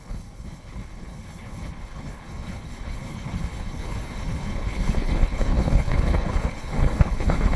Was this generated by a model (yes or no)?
yes